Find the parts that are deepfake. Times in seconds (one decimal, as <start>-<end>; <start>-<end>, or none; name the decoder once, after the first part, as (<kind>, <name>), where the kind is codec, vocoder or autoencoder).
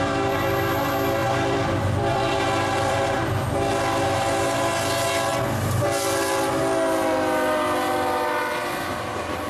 1.2-3.7 (vocoder, BigVGAN v2)